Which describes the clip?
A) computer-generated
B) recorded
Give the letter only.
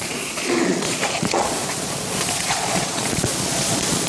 A